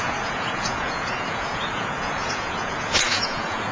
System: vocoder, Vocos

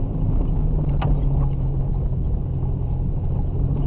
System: none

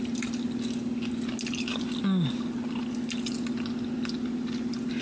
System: none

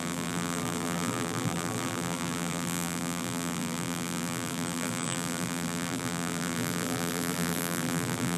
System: vocoder, BigVGAN v2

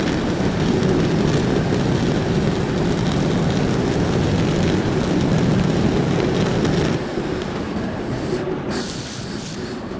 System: none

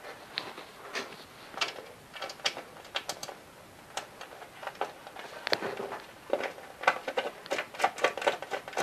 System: none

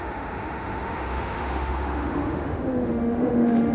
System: autoencoder, DAC-VAE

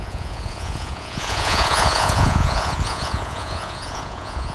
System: vocoder, Vocos